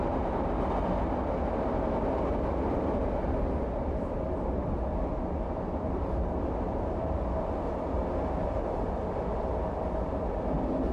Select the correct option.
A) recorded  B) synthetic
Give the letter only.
A